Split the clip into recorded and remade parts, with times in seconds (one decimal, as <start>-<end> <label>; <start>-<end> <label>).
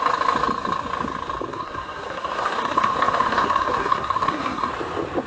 0.0-1.5 recorded; 1.5-4.7 remade; 4.7-5.3 recorded